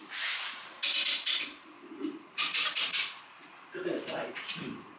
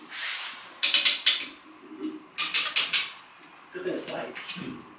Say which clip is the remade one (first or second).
first